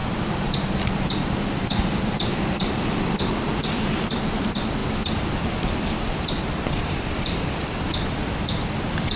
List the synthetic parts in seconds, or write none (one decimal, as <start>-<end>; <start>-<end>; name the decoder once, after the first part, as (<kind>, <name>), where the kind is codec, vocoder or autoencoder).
2.3-9.2 (vocoder, BigVGAN v2)